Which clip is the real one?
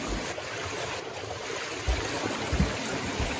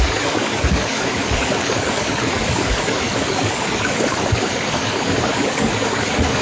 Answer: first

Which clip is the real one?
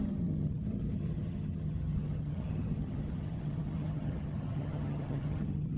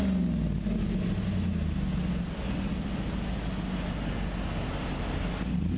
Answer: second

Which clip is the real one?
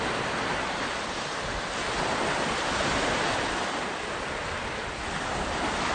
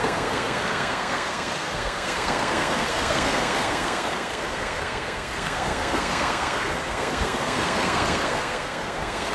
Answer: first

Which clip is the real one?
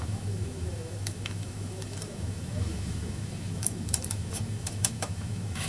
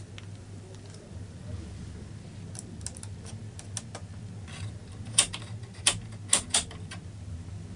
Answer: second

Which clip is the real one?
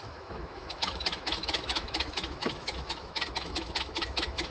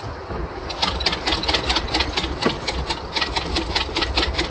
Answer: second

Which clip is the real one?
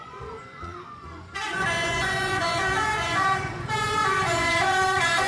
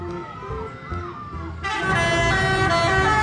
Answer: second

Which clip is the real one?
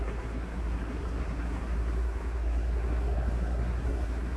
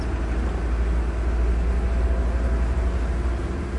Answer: second